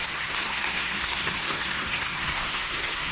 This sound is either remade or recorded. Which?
remade